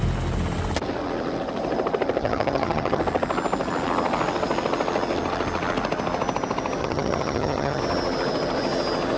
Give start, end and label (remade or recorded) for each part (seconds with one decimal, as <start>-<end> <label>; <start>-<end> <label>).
0.0-2.2 recorded; 2.2-3.0 remade; 3.0-6.8 recorded; 6.8-7.8 remade; 7.8-9.2 recorded

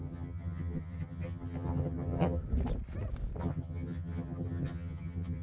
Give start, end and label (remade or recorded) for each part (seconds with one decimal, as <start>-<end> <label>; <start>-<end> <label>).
0.0-2.4 remade; 2.4-3.4 recorded; 3.4-5.4 remade

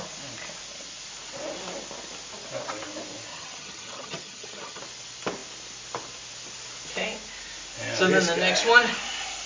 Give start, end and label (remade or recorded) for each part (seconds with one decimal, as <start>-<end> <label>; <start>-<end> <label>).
0.0-3.3 recorded; 3.3-4.8 remade; 4.8-9.5 recorded